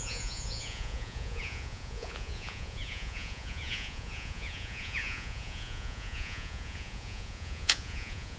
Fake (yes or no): yes